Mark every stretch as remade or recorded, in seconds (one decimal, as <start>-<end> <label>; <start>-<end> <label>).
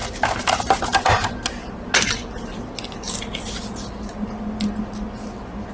0.0-5.7 recorded